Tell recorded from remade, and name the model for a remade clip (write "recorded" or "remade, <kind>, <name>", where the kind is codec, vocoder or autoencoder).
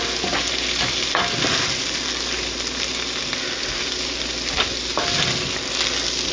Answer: recorded